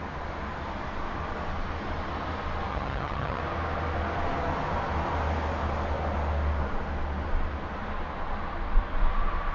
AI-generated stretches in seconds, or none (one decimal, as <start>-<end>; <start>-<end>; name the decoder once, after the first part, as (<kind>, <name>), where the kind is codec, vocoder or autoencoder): 2.7-3.4 (vocoder, HiFi-GAN)